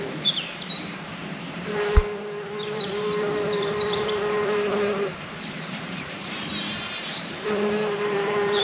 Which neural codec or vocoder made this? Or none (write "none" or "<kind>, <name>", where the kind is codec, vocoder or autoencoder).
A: vocoder, BigVGAN v2